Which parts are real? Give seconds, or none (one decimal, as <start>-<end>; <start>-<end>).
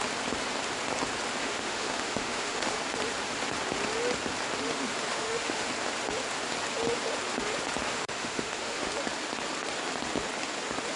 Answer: 0.0-1.4; 2.8-5.1; 5.7-7.9; 8.9-11.0